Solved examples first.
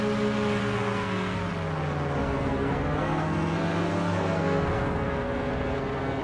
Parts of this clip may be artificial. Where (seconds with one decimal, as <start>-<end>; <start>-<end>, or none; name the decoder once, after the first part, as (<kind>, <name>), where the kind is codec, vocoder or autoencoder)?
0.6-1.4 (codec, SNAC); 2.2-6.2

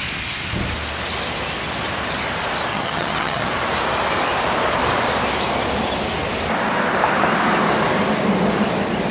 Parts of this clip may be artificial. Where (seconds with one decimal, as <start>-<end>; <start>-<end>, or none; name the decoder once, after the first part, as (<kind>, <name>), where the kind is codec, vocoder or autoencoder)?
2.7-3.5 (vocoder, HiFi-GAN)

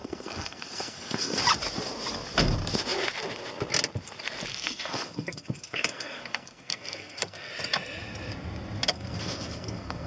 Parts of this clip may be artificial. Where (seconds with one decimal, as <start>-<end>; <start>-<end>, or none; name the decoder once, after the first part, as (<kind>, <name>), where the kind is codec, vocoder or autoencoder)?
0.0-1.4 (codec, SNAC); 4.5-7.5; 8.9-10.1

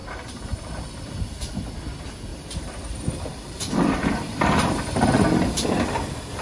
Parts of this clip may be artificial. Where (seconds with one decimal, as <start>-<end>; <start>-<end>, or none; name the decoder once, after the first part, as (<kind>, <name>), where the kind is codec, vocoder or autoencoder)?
0.0-0.7 (vocoder, BigVGAN v2); 2.3-4.8

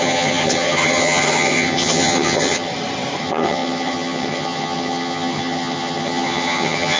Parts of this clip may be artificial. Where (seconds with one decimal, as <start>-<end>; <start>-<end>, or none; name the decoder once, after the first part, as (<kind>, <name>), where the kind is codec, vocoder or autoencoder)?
0.0-2.7 (vocoder, HiFi-GAN); 3.2-7.0